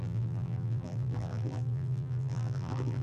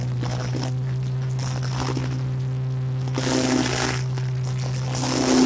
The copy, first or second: first